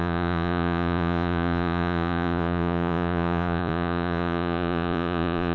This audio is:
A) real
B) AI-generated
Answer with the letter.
B